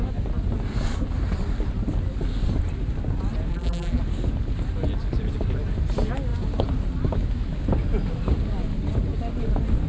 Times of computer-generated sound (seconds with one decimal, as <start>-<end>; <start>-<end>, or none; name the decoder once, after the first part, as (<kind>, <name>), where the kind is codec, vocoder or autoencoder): 3.5-4.0 (vocoder, BigVGAN v2)